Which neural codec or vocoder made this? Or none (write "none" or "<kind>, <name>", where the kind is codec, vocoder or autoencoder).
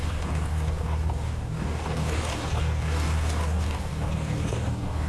codec, DAC